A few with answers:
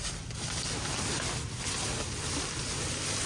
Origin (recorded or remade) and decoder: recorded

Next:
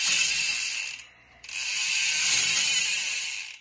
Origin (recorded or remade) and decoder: recorded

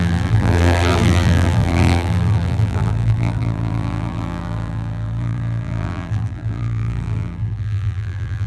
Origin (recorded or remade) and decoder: remade, vocoder, BigVGAN v2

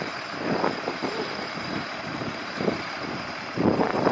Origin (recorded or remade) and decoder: remade, vocoder, BigVGAN v2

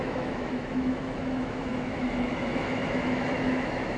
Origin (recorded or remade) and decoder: remade, autoencoder, DAC-VAE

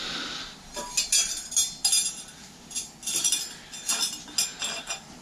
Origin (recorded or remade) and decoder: recorded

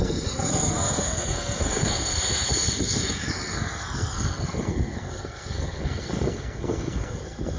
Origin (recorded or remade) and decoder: remade, codec, SNAC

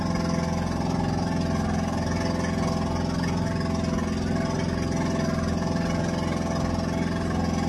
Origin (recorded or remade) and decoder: recorded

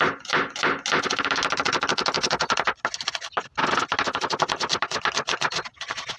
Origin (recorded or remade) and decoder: recorded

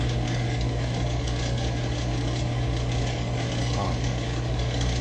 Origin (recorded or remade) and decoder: remade, codec, DAC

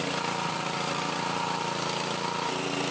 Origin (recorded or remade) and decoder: recorded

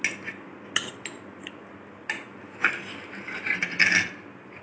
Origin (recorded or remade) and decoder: recorded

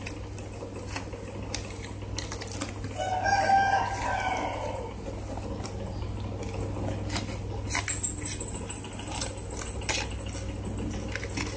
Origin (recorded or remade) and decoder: recorded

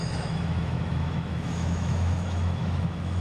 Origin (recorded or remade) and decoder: remade, autoencoder, DAC-VAE